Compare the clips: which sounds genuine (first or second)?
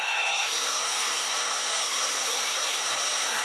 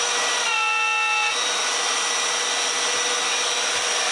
second